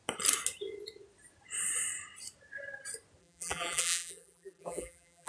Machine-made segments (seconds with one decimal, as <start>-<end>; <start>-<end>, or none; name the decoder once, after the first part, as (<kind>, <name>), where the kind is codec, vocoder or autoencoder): 3.2-5.3 (vocoder, BigVGAN v2)